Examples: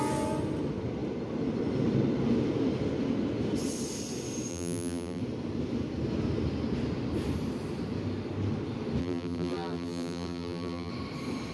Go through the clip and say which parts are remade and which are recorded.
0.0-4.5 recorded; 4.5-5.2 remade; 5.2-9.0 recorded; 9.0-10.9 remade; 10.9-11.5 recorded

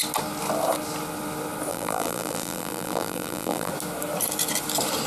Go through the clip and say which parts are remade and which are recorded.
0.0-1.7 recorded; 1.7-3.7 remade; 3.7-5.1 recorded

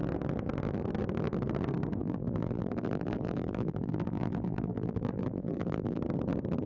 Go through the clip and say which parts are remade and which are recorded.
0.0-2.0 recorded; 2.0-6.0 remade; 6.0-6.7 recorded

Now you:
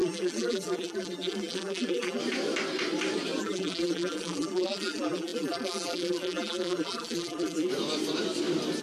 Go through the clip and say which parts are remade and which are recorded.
0.0-2.2 remade; 2.2-3.4 recorded; 3.4-7.7 remade; 7.7-8.8 recorded

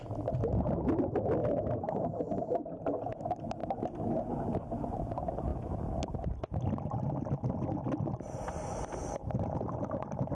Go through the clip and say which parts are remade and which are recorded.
0.0-1.4 recorded; 1.4-1.9 remade; 1.9-10.3 recorded